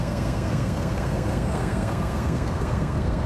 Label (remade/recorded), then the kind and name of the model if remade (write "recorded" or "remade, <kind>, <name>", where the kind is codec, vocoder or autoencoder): remade, codec, SNAC